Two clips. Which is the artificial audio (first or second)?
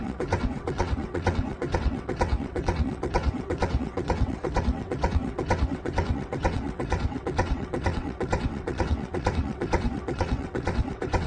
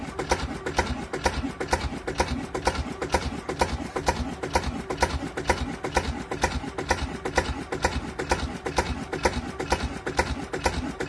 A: first